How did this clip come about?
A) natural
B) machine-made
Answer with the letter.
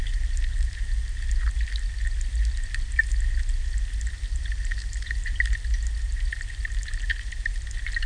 A